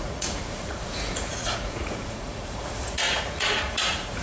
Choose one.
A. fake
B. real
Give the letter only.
A